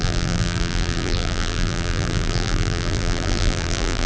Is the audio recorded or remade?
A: remade